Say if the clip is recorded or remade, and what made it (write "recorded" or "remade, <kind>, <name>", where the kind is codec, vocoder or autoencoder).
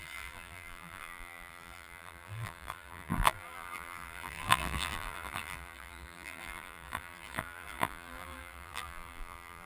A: remade, vocoder, BigVGAN v2